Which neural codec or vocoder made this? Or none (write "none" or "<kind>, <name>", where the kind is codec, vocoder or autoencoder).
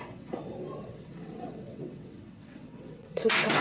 vocoder, WaveNeXt